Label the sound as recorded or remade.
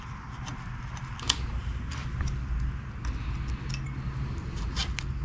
recorded